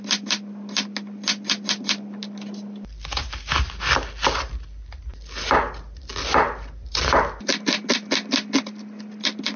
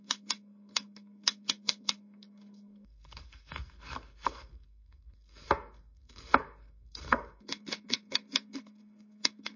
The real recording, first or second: first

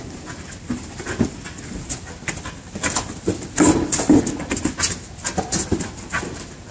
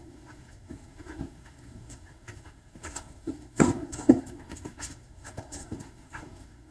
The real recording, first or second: first